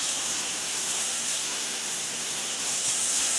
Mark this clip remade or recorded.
remade